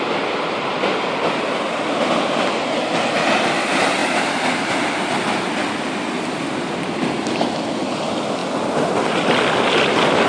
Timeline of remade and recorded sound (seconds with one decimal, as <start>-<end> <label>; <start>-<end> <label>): 0.0-10.3 recorded